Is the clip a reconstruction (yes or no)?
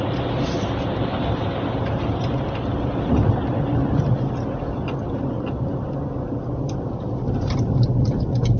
no